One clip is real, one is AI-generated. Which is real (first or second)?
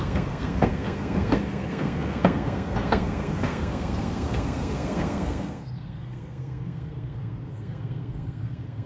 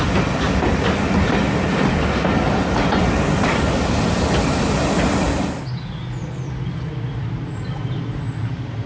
second